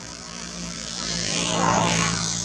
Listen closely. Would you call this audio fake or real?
fake